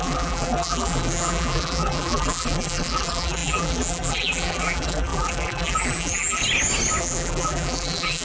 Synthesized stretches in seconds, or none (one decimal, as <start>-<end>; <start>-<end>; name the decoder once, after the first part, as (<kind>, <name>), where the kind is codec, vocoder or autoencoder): 0.0-6.4 (vocoder, BigVGAN v2); 7.0-8.2